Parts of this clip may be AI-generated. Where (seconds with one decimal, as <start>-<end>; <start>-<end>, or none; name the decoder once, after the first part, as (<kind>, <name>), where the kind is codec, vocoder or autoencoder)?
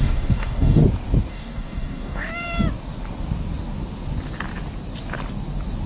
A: 0.0-0.8 (codec, DAC); 1.3-2.3